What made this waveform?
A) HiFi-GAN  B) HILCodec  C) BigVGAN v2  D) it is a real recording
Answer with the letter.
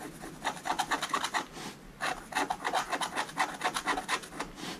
D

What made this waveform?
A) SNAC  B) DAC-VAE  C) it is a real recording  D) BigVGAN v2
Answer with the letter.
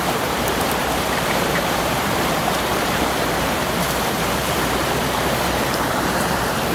D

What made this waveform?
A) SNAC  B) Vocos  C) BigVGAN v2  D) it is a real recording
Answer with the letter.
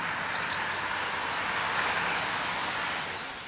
D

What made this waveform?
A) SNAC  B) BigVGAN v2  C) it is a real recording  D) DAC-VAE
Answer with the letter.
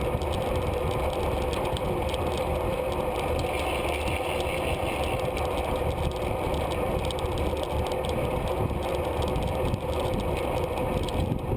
C